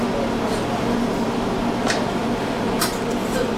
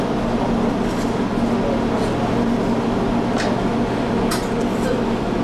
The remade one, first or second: first